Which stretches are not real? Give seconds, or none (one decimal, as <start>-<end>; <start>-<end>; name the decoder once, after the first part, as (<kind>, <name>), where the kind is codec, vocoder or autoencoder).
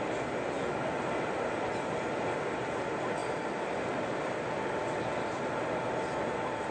none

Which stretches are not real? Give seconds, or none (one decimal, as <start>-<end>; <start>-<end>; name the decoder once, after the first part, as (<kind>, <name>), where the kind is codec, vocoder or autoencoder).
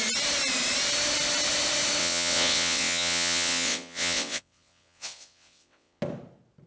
2.0-6.0 (vocoder, WaveNeXt)